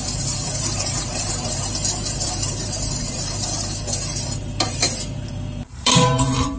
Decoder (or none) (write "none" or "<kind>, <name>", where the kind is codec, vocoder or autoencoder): vocoder, BigVGAN v2